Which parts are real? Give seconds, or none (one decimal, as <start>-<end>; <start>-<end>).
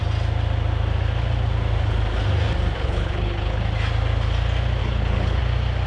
0.0-2.8; 3.6-4.8; 5.4-5.9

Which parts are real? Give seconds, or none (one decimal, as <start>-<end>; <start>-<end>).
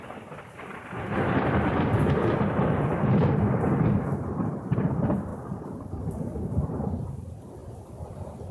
2.0-4.4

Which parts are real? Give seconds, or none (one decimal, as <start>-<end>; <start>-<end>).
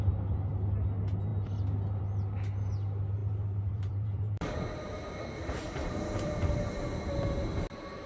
0.0-3.2; 6.8-8.1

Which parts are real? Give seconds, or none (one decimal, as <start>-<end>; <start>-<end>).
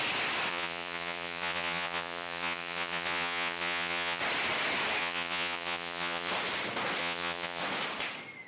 0.0-0.5; 4.2-5.0; 6.3-7.0; 7.6-8.5